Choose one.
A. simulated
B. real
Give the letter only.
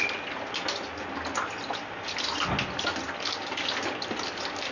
B